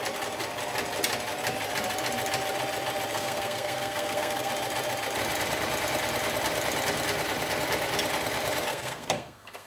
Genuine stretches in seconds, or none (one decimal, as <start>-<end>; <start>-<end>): 0.0-3.1; 4.5-8.7